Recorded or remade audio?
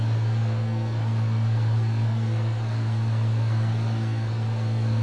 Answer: remade